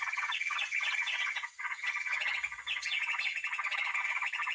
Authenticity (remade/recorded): remade